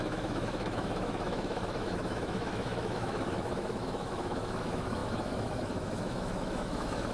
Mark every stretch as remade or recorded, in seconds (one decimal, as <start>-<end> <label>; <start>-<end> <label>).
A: 0.0-7.1 remade